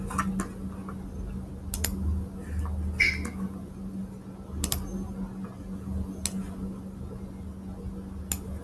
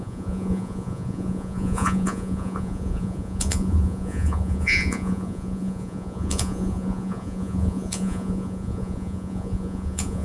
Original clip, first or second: first